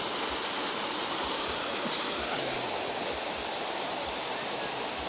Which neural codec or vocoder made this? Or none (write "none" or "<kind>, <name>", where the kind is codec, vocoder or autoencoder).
none